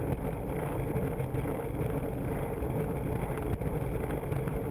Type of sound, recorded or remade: recorded